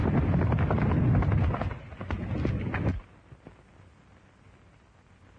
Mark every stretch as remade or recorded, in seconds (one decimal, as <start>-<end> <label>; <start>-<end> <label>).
0.0-5.4 recorded

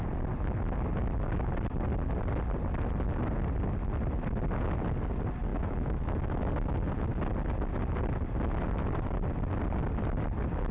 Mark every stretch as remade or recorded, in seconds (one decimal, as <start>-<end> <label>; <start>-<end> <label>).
0.0-5.5 recorded; 5.5-6.5 remade; 6.5-10.7 recorded

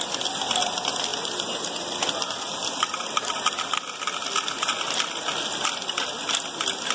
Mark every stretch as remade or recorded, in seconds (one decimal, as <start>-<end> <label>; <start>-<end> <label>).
0.0-6.9 recorded

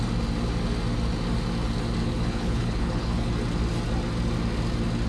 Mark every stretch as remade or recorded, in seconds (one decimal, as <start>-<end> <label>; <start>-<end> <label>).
0.0-2.0 recorded; 2.0-3.3 remade; 3.3-5.1 recorded

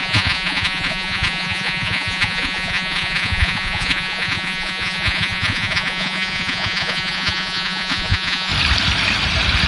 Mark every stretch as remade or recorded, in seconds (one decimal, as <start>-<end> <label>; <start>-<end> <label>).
0.0-8.5 remade; 8.5-9.7 recorded

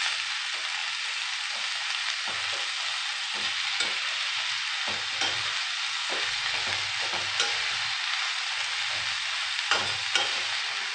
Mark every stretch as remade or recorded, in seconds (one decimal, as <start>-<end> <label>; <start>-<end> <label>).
0.0-10.9 recorded

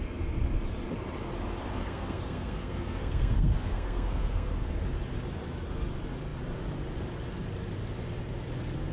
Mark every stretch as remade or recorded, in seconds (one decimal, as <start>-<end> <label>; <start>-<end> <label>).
0.0-1.8 recorded; 1.8-4.8 remade; 4.8-8.9 recorded

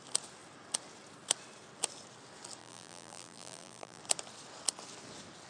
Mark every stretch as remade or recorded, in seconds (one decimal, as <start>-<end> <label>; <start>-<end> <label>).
0.0-2.6 recorded; 2.6-4.0 remade; 4.0-5.5 recorded